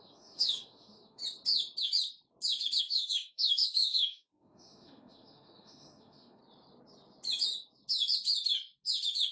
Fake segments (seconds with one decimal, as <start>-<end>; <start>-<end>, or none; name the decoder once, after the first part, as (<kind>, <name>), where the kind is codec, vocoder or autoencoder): 0.0-1.2 (autoencoder, DAC-VAE); 2.8-6.4